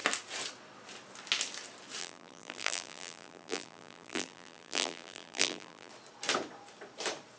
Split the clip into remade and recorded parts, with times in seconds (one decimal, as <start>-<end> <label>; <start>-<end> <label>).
0.0-2.0 recorded; 2.0-5.9 remade; 5.9-7.4 recorded